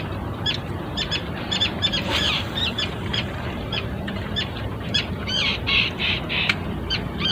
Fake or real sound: fake